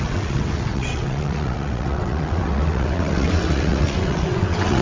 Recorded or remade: remade